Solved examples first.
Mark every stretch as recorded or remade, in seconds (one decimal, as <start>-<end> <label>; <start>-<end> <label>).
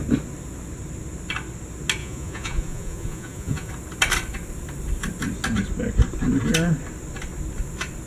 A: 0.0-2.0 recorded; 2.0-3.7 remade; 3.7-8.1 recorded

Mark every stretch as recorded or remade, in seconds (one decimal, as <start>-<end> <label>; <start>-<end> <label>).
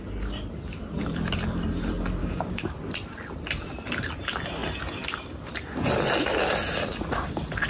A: 0.0-2.2 recorded; 2.2-2.7 remade; 2.7-7.7 recorded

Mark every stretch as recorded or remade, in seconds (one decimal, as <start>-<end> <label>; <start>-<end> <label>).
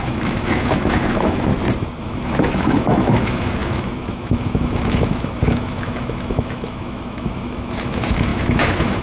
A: 0.0-1.5 remade; 1.5-2.0 recorded; 2.0-9.0 remade